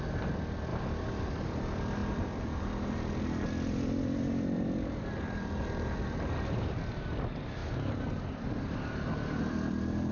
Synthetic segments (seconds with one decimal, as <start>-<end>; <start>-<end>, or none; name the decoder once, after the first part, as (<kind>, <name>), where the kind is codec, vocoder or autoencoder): 0.0-0.7 (vocoder, BigVGAN v2); 1.2-7.6; 9.4-10.1